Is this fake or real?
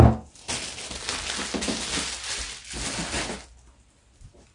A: real